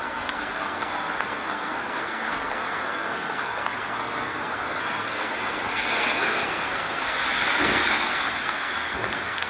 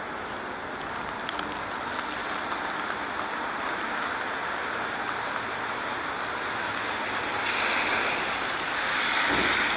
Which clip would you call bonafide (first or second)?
second